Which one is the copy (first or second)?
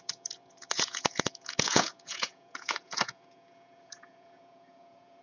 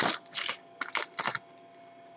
first